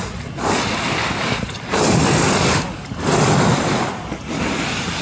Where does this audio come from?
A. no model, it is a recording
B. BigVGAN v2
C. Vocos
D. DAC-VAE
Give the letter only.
A